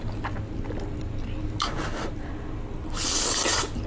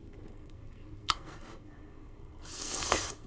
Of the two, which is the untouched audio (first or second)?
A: first